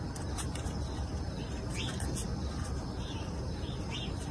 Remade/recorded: recorded